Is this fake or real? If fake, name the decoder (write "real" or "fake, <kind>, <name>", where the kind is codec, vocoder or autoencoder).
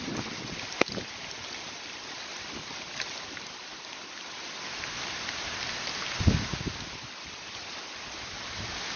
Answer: real